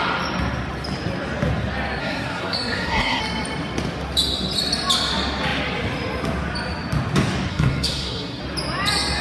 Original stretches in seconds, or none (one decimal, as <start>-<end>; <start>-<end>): 0.0-2.0; 3.2-7.5; 8.4-9.2